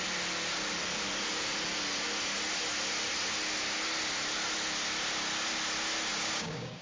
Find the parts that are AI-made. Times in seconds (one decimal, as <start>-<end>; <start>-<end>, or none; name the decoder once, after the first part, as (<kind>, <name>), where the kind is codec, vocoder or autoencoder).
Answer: 6.1-6.8 (codec, DAC)